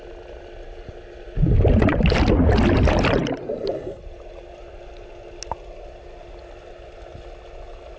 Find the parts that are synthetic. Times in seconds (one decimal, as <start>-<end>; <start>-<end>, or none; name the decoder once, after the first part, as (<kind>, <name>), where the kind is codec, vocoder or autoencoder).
none